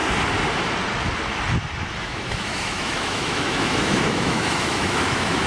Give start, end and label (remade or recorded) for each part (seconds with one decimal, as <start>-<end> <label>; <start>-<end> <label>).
0.0-2.0 recorded; 2.0-5.5 remade

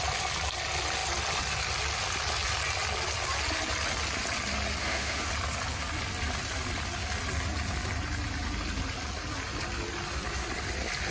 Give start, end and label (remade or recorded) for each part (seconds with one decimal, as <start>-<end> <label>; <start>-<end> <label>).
0.0-4.8 recorded; 4.8-5.3 remade; 5.3-11.1 recorded

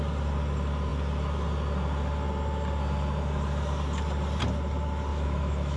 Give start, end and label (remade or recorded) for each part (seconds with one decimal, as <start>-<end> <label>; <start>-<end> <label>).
0.0-5.1 recorded; 5.1-5.8 remade

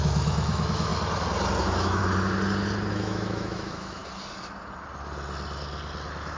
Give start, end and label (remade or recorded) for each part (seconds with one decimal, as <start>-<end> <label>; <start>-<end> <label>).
0.0-0.9 remade; 0.9-1.6 recorded; 1.6-2.0 remade; 2.0-2.9 recorded; 2.9-4.0 remade; 4.0-6.4 recorded

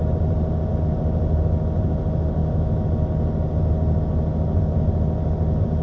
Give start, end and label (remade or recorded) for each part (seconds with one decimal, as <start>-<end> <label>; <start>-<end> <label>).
0.0-2.4 recorded; 2.4-3.0 remade; 3.0-5.8 recorded

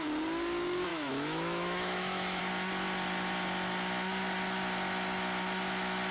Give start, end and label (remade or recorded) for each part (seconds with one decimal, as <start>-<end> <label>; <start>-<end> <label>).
0.0-0.9 recorded; 0.9-2.4 remade; 2.4-6.1 recorded